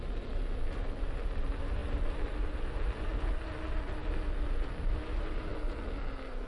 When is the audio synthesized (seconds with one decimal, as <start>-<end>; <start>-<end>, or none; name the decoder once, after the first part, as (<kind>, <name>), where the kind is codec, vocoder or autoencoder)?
none